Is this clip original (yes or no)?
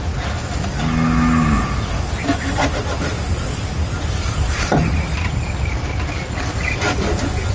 yes